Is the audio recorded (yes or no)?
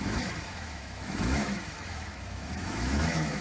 no